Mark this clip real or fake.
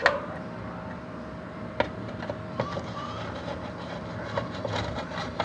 real